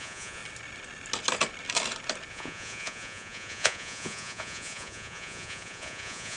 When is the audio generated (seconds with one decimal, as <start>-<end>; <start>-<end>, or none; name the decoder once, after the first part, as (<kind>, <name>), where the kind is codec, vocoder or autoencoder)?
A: 0.0-0.4 (vocoder, Vocos); 2.3-6.4